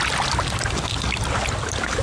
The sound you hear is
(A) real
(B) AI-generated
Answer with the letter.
A